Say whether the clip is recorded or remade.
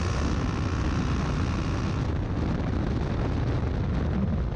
recorded